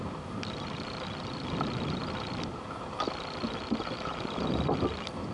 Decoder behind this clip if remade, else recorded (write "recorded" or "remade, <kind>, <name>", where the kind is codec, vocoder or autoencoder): recorded